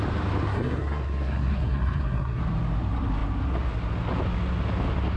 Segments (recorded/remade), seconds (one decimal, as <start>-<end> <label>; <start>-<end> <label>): 0.0-0.5 recorded; 0.5-2.4 remade; 2.4-5.2 recorded